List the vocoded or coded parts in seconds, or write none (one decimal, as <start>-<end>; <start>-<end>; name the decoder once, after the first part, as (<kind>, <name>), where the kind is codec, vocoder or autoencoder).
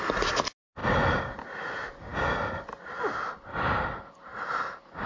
none